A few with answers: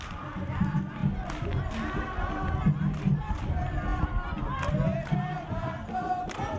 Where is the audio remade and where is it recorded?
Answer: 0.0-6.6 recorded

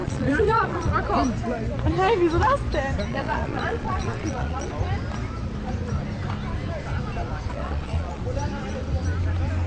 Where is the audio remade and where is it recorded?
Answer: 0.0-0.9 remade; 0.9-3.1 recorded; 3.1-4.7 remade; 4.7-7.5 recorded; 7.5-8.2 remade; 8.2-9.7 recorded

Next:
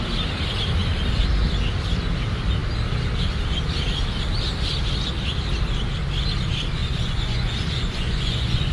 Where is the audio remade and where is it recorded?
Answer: 0.0-6.8 recorded; 6.8-8.7 remade

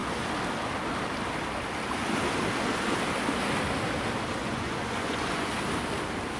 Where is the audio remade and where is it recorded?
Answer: 0.0-4.4 recorded; 4.4-5.5 remade; 5.5-6.4 recorded